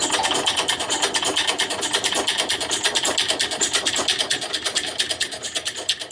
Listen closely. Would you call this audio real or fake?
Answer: real